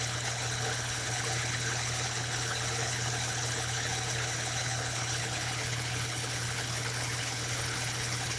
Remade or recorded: remade